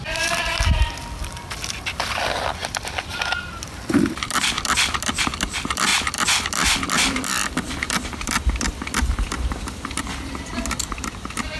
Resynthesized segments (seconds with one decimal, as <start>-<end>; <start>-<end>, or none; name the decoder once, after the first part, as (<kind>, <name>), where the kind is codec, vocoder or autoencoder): 0.0-11.6 (vocoder, BigVGAN v2)